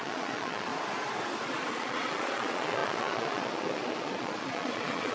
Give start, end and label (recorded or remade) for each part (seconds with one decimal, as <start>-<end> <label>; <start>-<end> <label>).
0.0-0.7 remade; 0.7-1.7 recorded; 1.7-5.1 remade